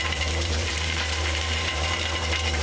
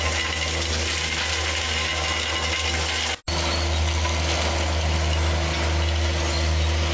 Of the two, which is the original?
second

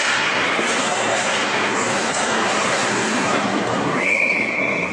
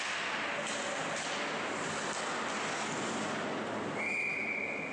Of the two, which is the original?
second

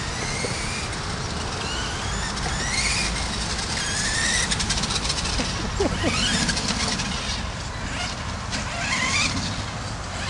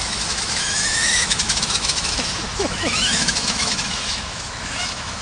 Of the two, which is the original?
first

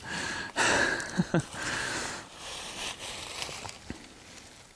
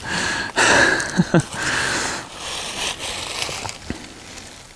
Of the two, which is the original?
second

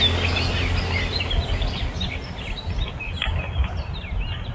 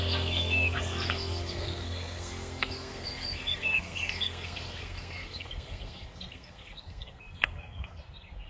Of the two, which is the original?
first